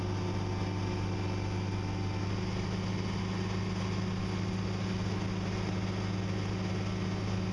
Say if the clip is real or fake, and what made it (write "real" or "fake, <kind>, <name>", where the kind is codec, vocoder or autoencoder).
real